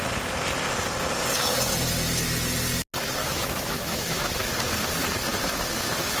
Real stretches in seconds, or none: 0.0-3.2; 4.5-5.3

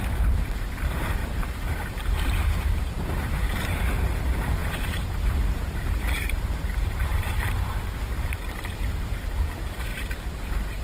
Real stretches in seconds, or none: 0.0-1.2; 3.9-4.6; 7.5-9.9

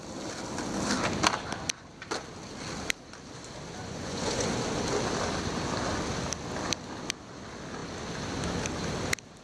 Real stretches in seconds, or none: 0.0-3.8; 4.5-9.4

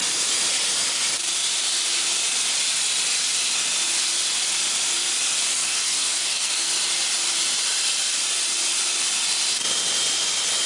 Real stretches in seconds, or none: 0.0-5.5; 6.7-10.7